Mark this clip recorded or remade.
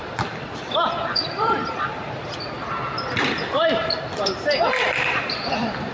remade